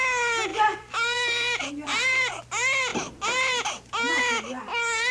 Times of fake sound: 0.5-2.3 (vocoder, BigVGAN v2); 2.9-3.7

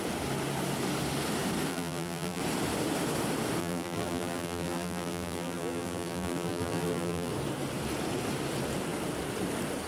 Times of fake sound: 1.7-2.4 (vocoder, BigVGAN v2); 3.6-7.3

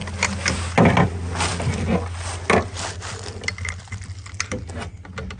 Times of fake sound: none

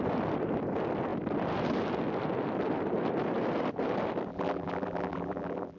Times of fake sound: 4.3-5.8 (vocoder, BigVGAN v2)